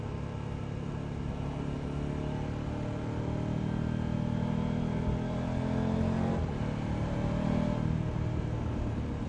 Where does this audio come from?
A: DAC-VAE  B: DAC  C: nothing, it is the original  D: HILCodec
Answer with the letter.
C